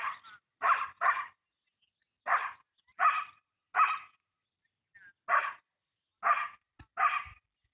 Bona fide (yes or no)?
yes